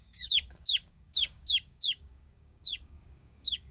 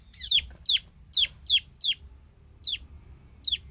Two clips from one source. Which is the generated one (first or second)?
first